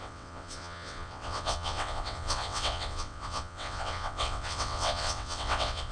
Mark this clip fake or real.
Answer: fake